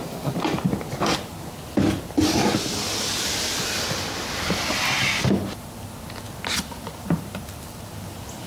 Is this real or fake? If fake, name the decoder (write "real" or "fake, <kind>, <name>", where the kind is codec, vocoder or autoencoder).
real